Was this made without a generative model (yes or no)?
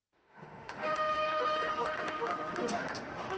no